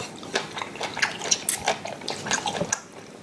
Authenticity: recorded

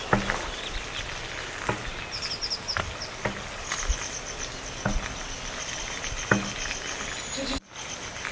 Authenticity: recorded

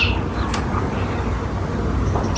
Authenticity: recorded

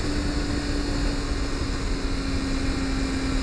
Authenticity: recorded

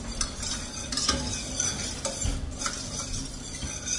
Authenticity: recorded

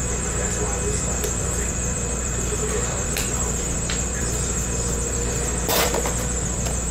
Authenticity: remade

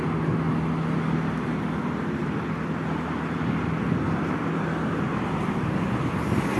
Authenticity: recorded